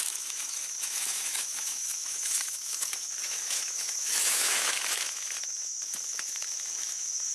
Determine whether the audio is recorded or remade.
remade